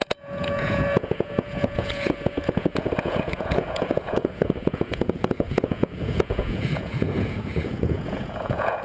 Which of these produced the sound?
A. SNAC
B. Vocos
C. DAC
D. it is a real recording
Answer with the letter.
B